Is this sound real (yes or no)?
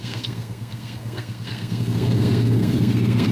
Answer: no